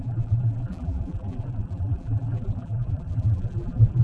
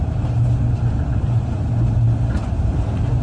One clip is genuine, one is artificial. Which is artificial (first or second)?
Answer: first